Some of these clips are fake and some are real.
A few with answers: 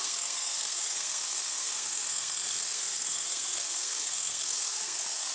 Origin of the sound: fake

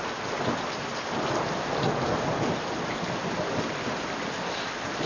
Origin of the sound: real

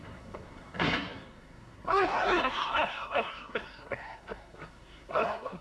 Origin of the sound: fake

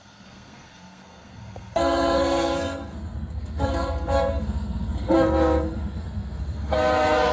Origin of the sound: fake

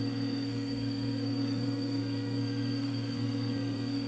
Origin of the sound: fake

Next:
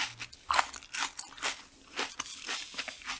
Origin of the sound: real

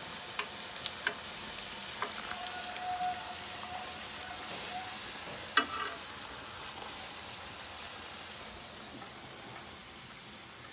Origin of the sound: real